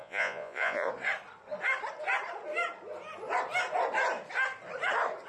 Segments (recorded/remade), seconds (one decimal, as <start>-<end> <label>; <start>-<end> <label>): 0.0-0.9 remade; 0.9-5.3 recorded